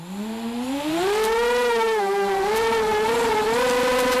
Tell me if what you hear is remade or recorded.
recorded